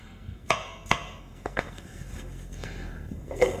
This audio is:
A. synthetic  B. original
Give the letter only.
A